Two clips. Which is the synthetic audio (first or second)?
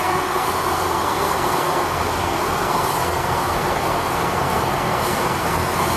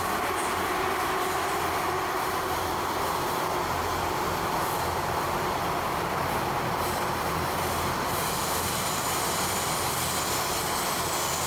first